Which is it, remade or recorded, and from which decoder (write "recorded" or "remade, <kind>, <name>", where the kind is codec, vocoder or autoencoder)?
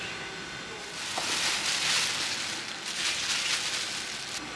recorded